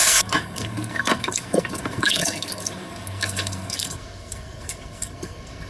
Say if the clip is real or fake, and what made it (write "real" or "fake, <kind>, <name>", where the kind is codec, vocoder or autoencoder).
fake, codec, SNAC